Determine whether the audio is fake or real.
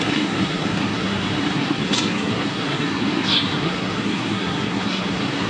fake